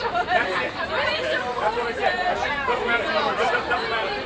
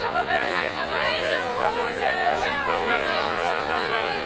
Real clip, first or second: first